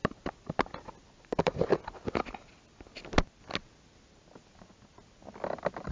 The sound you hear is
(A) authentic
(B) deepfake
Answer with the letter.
A